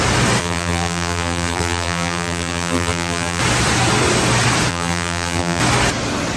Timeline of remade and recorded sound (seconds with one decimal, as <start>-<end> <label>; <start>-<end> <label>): 0.0-0.4 recorded; 0.4-3.4 remade; 3.4-4.7 recorded; 4.7-5.6 remade; 5.6-6.4 recorded